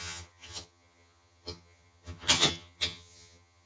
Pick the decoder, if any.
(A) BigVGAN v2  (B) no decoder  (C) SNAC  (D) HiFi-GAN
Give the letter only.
D